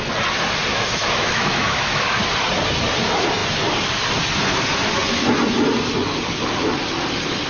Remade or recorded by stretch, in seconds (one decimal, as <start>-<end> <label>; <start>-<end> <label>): 0.0-0.7 recorded; 0.7-2.1 remade; 2.1-7.5 recorded